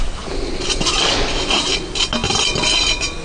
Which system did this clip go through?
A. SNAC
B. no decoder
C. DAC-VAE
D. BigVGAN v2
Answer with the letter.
B